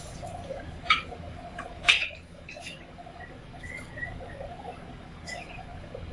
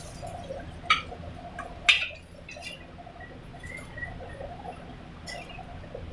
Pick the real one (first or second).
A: second